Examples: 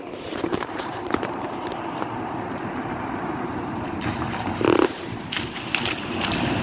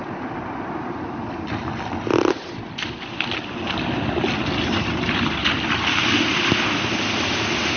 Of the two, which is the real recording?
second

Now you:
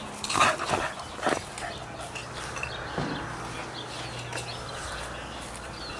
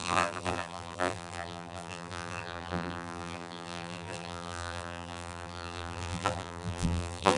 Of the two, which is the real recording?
first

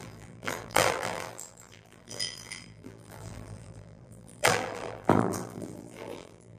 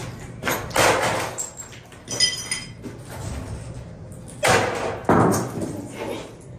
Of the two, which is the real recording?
second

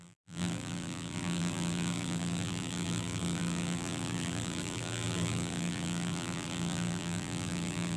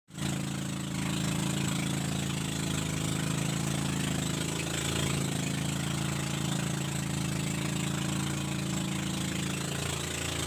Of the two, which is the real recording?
second